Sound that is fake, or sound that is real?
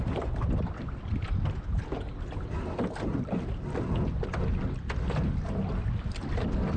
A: real